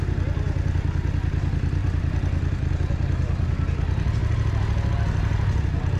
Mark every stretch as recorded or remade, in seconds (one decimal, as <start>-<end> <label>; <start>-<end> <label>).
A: 0.0-6.0 recorded